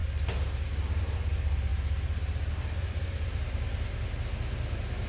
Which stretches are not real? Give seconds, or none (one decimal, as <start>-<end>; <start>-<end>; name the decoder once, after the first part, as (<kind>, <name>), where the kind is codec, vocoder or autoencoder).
none